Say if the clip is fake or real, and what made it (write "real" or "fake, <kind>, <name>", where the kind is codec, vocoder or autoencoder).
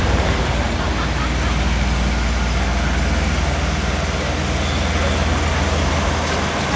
real